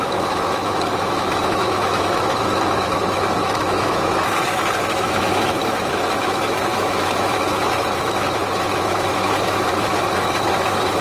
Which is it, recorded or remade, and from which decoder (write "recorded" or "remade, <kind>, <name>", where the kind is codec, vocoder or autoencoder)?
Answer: remade, autoencoder, DAC-VAE